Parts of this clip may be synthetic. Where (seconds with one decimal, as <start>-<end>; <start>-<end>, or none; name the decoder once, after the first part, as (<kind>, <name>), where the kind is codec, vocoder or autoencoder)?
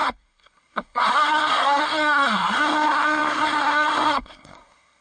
0.0-5.0 (codec, SNAC)